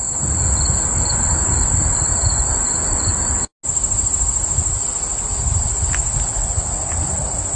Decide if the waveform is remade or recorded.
recorded